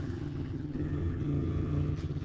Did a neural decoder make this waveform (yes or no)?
yes